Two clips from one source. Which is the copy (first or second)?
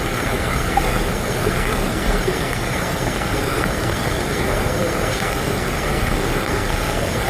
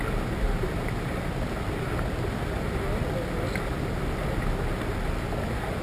first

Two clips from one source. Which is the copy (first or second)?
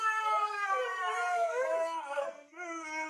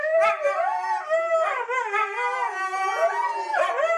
first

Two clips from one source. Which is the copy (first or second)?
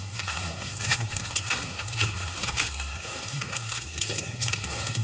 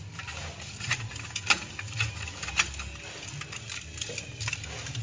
first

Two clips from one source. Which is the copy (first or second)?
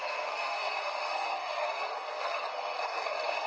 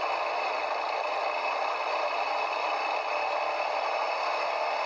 first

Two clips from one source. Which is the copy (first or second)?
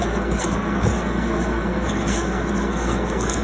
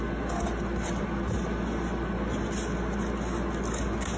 first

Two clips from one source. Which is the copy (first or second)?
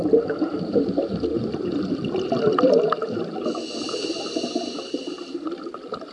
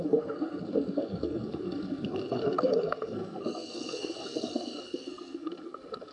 second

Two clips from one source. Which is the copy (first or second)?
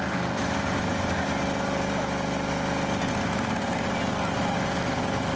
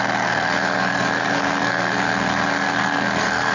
second